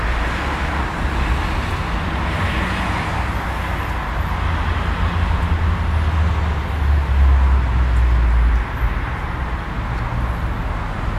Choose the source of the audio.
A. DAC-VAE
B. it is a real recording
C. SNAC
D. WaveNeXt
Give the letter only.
B